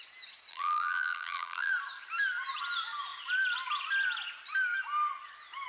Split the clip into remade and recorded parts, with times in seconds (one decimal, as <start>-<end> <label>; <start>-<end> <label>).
0.0-0.5 recorded; 0.5-1.7 remade; 1.7-5.7 recorded

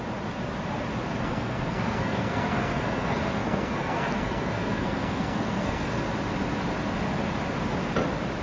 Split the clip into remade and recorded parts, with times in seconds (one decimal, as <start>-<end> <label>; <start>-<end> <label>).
0.0-1.1 recorded; 1.1-6.1 remade; 6.1-8.4 recorded